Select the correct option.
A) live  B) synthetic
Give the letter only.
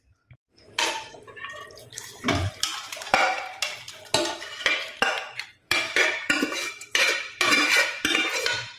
B